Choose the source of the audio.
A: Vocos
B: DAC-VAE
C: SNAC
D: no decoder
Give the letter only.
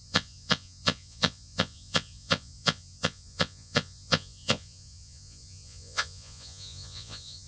A